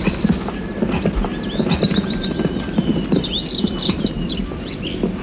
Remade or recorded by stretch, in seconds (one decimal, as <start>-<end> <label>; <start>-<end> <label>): 0.0-5.2 recorded